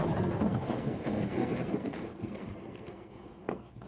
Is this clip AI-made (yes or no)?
yes